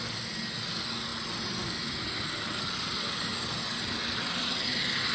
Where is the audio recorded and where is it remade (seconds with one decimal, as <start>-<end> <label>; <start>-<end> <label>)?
0.0-5.1 recorded